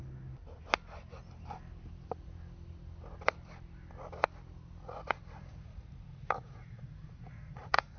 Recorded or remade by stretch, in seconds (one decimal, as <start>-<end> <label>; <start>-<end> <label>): 0.0-4.8 recorded; 4.8-8.0 remade